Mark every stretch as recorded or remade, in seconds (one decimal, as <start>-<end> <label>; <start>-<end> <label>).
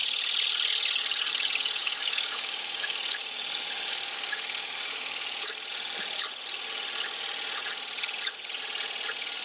0.0-1.8 recorded; 1.8-5.7 remade; 5.7-9.4 recorded